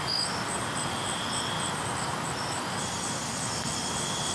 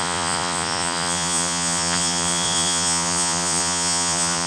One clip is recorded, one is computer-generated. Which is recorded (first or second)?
first